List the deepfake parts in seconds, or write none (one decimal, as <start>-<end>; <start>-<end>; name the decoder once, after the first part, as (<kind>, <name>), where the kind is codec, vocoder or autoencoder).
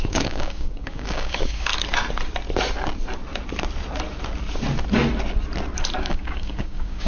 0.0-1.7 (codec, DAC); 6.0-7.1